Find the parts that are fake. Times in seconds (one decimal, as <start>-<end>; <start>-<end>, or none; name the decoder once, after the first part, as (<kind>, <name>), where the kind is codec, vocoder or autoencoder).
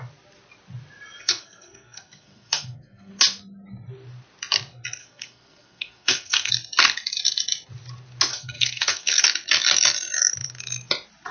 1.2-3.1 (codec, SNAC); 5.0-6.5; 8.3-9.2